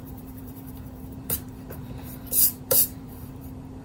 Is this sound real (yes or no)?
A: no